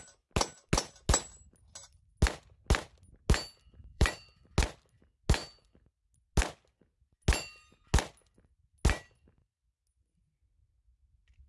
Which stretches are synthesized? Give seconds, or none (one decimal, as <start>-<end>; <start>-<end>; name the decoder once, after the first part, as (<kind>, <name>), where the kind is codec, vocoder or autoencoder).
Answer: 3.8-4.5 (vocoder, BigVGAN v2)

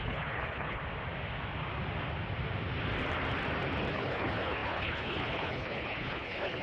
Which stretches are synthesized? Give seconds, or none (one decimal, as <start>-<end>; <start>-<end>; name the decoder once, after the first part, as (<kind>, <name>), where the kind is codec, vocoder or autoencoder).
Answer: 0.0-0.8 (codec, HILCodec); 3.9-6.6

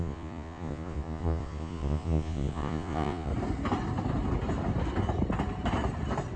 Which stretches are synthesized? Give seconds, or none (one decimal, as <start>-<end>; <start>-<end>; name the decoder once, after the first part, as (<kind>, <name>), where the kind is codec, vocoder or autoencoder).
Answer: 0.0-3.3 (vocoder, Vocos)

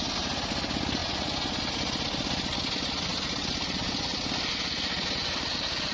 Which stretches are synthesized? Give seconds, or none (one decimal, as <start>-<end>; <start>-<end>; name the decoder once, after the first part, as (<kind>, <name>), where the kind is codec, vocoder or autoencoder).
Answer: none

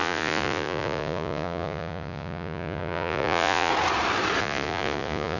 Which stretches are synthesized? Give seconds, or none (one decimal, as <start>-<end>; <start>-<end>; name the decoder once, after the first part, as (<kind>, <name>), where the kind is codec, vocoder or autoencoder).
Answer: 0.0-3.7 (vocoder, Vocos); 4.4-5.4